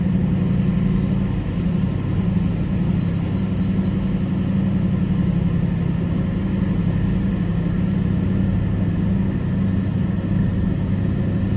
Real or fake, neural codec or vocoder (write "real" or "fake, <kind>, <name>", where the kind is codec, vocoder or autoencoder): real